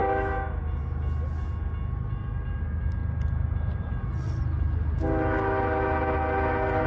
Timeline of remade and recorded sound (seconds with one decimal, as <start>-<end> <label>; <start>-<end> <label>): 0.0-6.9 recorded